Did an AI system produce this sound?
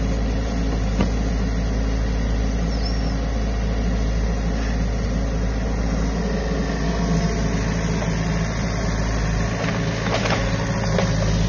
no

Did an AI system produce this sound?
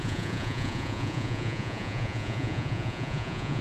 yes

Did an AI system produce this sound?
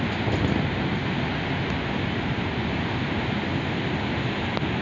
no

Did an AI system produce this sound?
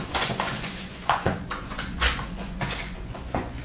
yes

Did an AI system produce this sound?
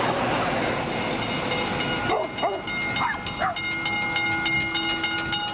no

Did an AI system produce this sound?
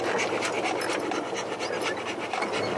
no